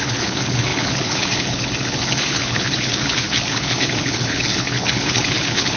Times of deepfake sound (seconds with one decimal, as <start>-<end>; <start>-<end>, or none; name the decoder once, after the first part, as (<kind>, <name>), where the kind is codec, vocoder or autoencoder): 0.0-5.8 (codec, HILCodec)